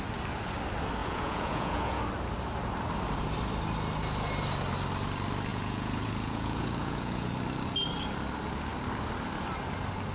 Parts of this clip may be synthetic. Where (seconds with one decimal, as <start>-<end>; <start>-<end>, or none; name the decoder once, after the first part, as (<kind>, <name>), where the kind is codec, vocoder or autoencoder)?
1.0-2.0 (vocoder, Vocos); 5.5-7.3